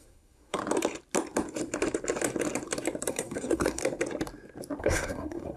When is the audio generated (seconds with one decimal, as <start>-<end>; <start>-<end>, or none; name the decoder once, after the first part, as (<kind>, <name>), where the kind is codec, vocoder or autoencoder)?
0.0-0.6 (codec, SNAC); 3.1-3.8; 4.8-5.6